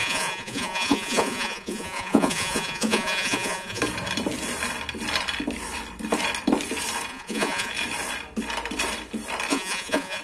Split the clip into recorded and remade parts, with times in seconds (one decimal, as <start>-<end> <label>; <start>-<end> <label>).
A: 0.0-3.8 remade; 3.8-7.1 recorded; 7.1-7.7 remade; 7.7-9.5 recorded; 9.5-10.2 remade

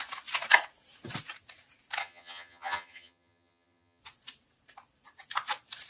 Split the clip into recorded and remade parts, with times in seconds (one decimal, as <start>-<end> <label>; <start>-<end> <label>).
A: 0.0-2.0 recorded; 2.0-4.0 remade; 4.0-5.9 recorded

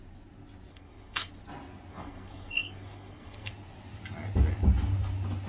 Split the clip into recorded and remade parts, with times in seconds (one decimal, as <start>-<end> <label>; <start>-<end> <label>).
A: 0.0-0.7 recorded; 0.7-1.3 remade; 1.3-1.9 recorded; 1.9-3.5 remade; 3.5-5.5 recorded

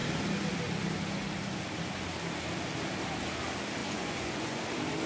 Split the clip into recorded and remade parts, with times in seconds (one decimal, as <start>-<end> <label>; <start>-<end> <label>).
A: 0.0-3.8 recorded; 3.8-4.6 remade; 4.6-5.1 recorded

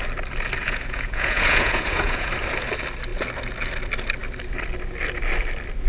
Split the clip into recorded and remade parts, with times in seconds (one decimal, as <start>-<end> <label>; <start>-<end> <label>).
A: 0.0-0.6 recorded; 0.6-2.3 remade; 2.3-5.9 recorded

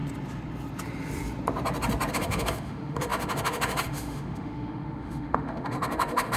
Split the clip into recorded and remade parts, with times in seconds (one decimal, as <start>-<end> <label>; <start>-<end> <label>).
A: 0.0-2.1 recorded; 2.1-6.4 remade

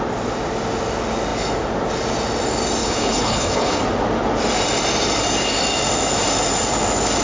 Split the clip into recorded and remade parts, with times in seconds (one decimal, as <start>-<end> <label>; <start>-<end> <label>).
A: 0.0-2.8 recorded; 2.8-3.8 remade; 3.8-7.2 recorded

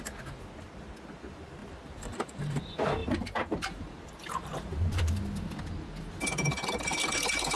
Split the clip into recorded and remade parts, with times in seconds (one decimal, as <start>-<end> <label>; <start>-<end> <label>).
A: 0.0-1.6 recorded; 1.6-2.6 remade; 2.6-3.0 recorded; 3.0-5.2 remade; 5.2-7.6 recorded